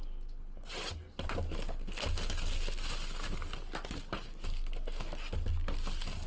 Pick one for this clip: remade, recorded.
recorded